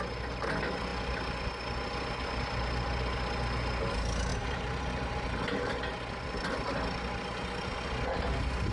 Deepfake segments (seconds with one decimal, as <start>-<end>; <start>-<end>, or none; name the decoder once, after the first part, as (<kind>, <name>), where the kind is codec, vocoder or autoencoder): 4.3-5.8 (vocoder, BigVGAN v2)

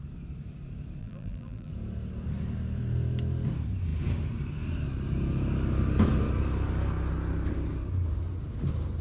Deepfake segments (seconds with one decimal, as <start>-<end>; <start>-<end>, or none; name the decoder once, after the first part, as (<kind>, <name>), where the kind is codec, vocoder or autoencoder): 1.0-1.7 (vocoder, BigVGAN v2)

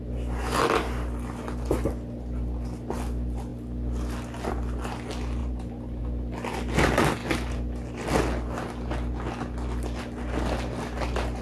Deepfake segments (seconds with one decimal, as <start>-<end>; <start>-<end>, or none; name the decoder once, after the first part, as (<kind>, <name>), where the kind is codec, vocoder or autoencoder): 5.4-6.0 (vocoder, BigVGAN v2)

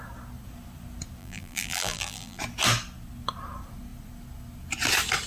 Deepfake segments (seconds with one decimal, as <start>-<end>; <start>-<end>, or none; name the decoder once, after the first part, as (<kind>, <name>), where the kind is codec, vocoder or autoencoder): 1.2-2.4 (vocoder, BigVGAN v2)